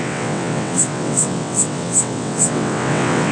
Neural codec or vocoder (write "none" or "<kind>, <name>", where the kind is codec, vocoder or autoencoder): vocoder, WaveNeXt